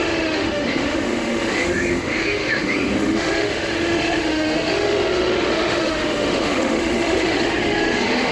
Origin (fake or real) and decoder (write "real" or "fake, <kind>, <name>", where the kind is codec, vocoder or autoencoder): fake, autoencoder, DAC-VAE